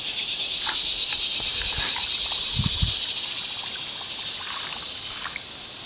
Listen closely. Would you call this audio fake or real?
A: real